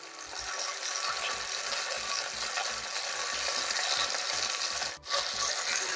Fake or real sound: real